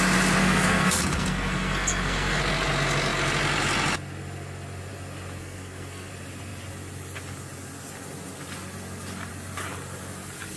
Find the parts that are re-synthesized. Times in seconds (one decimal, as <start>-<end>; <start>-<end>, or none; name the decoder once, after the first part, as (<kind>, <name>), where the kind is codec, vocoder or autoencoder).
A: 0.4-2.4 (codec, SNAC); 5.4-6.1